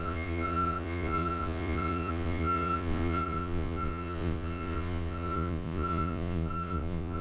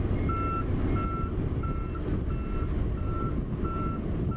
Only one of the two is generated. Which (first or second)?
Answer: first